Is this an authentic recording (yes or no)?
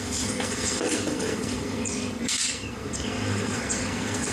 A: no